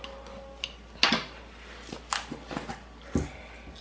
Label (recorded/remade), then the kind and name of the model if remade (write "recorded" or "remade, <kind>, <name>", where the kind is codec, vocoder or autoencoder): recorded